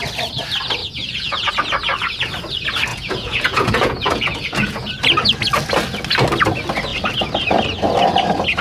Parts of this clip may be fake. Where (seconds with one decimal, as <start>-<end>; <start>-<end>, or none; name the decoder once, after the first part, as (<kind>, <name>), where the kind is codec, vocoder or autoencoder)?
0.8-1.5 (vocoder, Vocos); 2.9-4.9

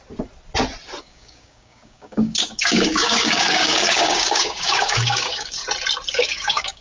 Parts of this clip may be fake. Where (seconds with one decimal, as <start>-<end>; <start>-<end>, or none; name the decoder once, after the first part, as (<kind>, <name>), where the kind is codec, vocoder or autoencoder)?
1.0-5.6 (codec, DAC); 6.1-6.8

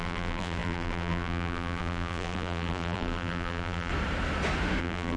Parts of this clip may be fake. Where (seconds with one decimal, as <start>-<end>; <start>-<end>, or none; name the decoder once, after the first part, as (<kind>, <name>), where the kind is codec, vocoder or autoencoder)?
0.0-3.9 (vocoder, BigVGAN v2); 4.8-5.2

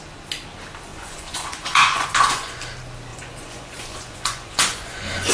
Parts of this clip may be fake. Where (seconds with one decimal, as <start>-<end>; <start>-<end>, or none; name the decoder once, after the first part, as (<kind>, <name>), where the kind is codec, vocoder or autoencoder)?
0.9-2.6 (vocoder, Vocos); 3.1-5.3

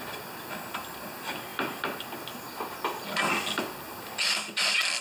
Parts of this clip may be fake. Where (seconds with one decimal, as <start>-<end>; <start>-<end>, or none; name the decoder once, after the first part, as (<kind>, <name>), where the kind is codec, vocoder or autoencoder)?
none

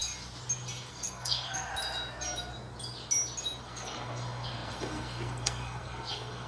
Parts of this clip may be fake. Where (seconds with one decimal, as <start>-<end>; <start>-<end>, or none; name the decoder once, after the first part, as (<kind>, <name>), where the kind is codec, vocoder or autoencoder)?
0.9-1.7 (codec, SNAC); 3.6-6.5

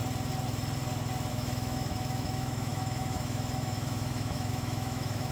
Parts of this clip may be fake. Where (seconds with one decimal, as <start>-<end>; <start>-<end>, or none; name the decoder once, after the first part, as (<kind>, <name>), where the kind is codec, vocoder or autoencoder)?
1.3-5.3 (autoencoder, DAC-VAE)